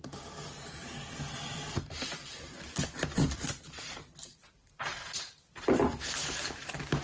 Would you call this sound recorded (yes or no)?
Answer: yes